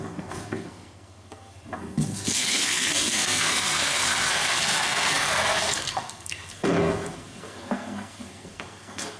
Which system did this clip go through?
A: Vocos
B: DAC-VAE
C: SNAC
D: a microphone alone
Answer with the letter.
C